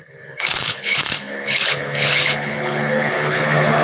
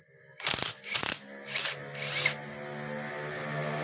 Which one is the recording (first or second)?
second